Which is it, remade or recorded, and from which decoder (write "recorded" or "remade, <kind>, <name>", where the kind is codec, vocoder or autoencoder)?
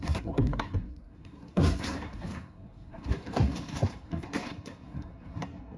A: remade, codec, SNAC